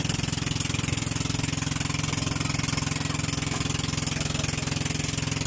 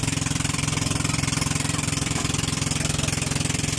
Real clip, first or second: first